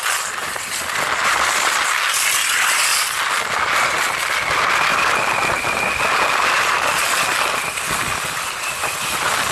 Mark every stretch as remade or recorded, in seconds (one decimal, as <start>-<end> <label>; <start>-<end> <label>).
0.0-9.5 recorded